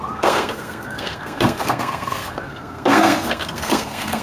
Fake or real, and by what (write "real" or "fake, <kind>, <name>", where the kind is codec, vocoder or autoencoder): fake, codec, SNAC